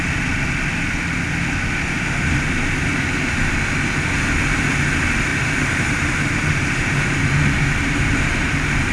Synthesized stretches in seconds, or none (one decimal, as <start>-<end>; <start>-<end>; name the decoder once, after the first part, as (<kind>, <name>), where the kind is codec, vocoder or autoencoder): 5.3-8.3 (vocoder, BigVGAN v2)